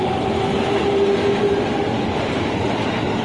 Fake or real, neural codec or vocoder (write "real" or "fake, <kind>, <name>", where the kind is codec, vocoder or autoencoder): real